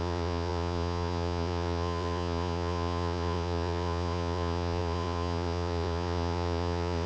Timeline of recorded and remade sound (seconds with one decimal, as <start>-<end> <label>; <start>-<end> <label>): 0.0-7.1 remade